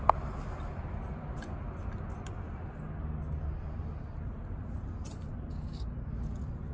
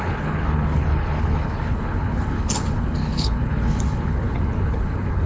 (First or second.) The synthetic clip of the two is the second